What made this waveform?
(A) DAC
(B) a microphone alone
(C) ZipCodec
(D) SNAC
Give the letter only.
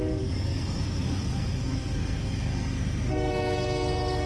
D